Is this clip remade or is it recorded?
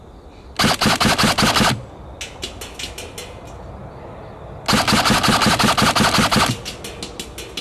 recorded